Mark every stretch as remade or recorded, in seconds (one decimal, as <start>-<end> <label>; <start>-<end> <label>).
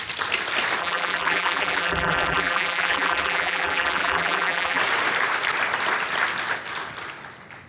0.0-0.8 recorded; 0.8-4.8 remade; 4.8-7.7 recorded